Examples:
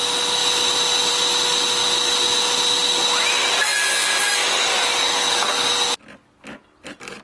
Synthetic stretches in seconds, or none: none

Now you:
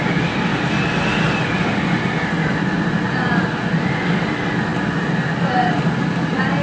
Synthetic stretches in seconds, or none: none

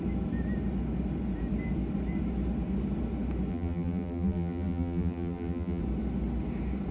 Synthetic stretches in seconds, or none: 3.5-5.8 (vocoder, BigVGAN v2)

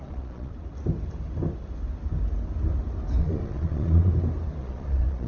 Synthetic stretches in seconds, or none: 0.0-0.5 (vocoder, Vocos); 3.2-4.1; 4.6-5.3

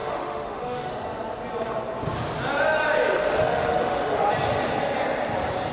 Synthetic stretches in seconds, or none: 0.0-0.9 (autoencoder, DAC-VAE); 3.2-4.3

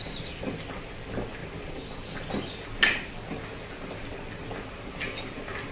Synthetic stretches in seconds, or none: none

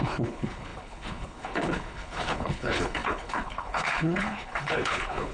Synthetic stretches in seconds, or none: 0.0-5.3 (codec, HILCodec)

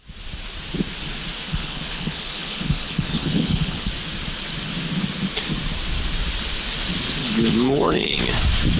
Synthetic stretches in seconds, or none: 1.5-3.9 (codec, HILCodec); 7.2-8.2